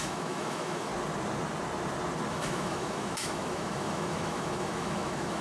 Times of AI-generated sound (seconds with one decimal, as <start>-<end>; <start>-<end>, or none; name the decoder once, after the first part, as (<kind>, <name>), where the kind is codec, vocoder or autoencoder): 0.0-0.9 (autoencoder, DAC-VAE); 2.3-5.4